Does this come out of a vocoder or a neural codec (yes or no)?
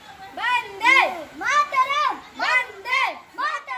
no